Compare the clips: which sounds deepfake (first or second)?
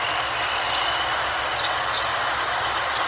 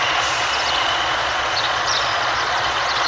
second